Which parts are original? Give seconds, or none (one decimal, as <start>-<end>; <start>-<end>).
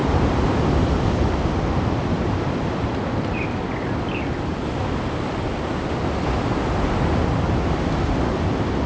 0.0-8.9